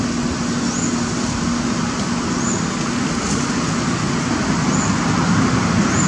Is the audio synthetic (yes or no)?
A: no